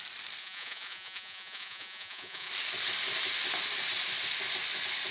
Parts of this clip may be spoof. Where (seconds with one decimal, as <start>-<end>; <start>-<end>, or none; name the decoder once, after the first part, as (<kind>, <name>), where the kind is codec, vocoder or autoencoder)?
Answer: 0.4-2.5 (vocoder, Vocos)